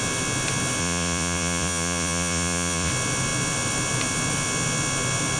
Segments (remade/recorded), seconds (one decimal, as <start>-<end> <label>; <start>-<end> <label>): 0.0-0.8 recorded; 0.8-2.9 remade; 2.9-5.4 recorded